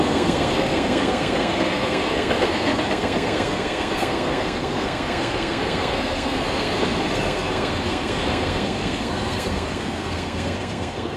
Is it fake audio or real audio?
fake